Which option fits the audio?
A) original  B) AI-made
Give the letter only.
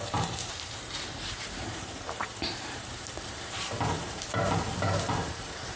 B